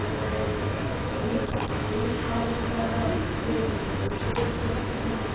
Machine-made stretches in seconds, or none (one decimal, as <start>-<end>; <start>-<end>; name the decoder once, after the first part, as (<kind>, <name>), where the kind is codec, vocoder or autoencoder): 0.0-4.2 (autoencoder, DAC-VAE); 4.8-5.3